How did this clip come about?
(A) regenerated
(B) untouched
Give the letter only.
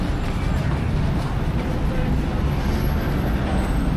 B